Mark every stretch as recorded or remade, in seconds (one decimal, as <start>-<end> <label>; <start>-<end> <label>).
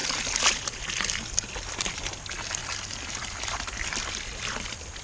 0.0-2.1 remade; 2.1-2.6 recorded; 2.6-5.0 remade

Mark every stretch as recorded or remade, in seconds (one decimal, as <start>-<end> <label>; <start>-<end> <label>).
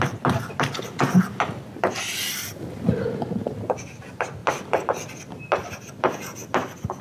0.0-7.0 recorded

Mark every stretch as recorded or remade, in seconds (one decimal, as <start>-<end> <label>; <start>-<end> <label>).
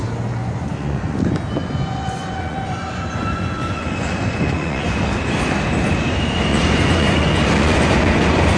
0.0-0.4 recorded; 0.4-1.2 remade; 1.2-1.6 recorded; 1.6-5.1 remade; 5.1-6.5 recorded; 6.5-8.6 remade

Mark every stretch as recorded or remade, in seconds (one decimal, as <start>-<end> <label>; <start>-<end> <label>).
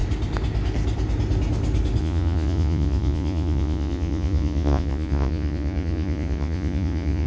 0.0-2.0 recorded; 2.0-7.3 remade